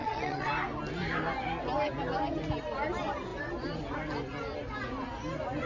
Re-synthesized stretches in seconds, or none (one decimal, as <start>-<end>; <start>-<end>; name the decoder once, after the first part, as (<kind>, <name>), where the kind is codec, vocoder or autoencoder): 0.0-0.5 (vocoder, Vocos)